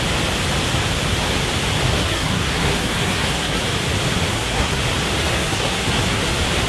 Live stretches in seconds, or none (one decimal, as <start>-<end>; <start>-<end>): 0.0-1.9; 3.6-4.3; 4.8-5.2; 6.3-6.7